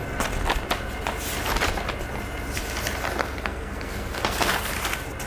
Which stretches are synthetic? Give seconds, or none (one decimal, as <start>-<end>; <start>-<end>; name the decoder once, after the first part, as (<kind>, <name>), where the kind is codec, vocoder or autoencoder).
3.2-4.7 (codec, SNAC)